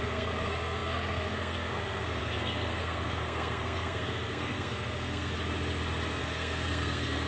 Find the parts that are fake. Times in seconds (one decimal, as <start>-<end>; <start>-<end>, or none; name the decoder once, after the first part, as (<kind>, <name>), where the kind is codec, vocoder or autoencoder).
0.0-5.3 (codec, SNAC); 6.2-7.3